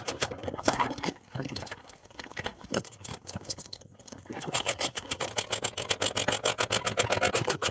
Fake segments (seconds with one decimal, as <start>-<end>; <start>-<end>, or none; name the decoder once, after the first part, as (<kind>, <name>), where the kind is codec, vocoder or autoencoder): 0.0-5.3 (codec, SNAC); 7.3-7.7